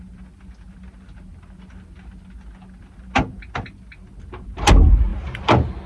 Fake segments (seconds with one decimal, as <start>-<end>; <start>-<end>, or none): none